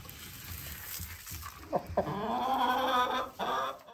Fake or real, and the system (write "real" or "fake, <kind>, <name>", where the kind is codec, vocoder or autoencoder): real